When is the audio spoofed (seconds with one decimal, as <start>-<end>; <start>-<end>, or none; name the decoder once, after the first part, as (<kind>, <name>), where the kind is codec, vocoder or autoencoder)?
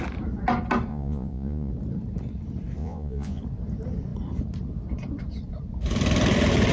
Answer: 0.9-1.7 (vocoder, Vocos); 2.8-3.4